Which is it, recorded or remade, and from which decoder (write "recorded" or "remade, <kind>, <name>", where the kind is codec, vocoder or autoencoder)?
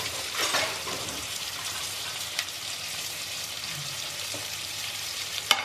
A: remade, vocoder, BigVGAN v2